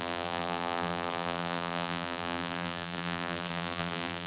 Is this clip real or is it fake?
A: fake